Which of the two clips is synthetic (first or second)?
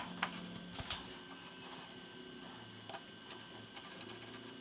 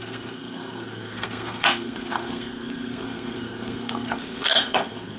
second